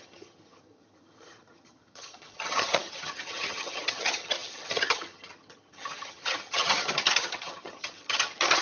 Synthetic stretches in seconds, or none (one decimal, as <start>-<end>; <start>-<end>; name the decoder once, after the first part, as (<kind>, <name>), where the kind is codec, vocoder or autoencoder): 0.0-8.6 (vocoder, HiFi-GAN)